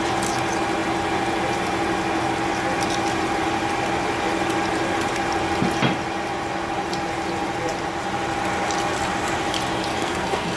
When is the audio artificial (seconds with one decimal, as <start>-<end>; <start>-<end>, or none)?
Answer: 9.9-10.6

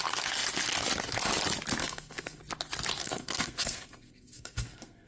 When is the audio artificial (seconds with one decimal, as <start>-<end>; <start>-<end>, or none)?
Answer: 1.8-2.4; 3.0-5.1

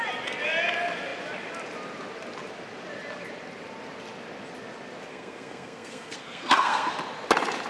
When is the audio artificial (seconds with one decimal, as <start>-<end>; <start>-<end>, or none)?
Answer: 5.1-6.9

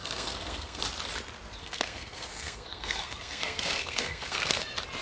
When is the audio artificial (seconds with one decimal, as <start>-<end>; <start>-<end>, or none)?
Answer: 0.0-0.8; 1.6-4.6

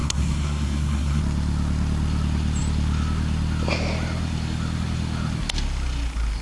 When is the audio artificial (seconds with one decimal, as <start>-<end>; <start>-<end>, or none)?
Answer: 0.0-1.2

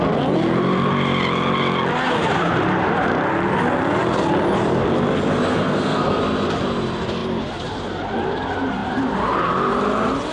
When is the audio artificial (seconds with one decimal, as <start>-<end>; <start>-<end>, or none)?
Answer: 5.5-6.2